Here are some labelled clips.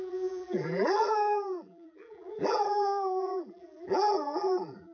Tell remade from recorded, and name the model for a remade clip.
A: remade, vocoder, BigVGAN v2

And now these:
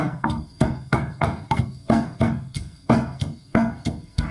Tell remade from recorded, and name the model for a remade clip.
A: remade, codec, SNAC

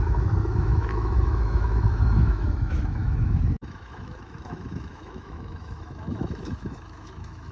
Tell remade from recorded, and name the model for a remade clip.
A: remade, autoencoder, DAC-VAE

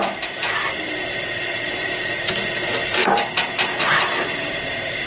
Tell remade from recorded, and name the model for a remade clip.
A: remade, vocoder, BigVGAN v2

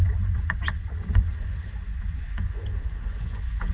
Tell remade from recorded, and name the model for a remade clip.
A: remade, vocoder, Vocos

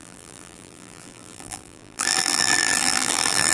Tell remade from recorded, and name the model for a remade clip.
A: remade, vocoder, BigVGAN v2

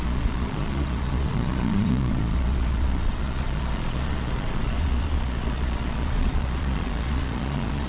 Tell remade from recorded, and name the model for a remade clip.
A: remade, vocoder, Vocos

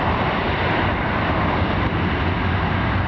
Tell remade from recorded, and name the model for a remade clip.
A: recorded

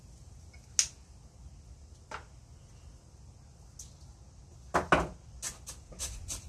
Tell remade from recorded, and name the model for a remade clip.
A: recorded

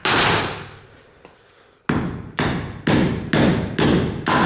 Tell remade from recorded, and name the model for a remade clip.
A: recorded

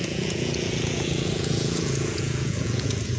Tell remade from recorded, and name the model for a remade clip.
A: remade, vocoder, Vocos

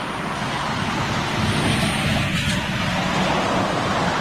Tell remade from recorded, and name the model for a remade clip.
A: recorded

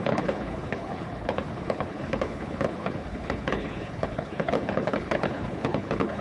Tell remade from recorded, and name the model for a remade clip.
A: remade, codec, HILCodec